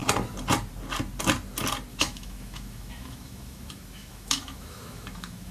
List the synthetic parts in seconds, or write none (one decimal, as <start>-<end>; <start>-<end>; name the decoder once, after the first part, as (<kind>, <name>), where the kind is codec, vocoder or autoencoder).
1.9-5.5 (autoencoder, DAC-VAE)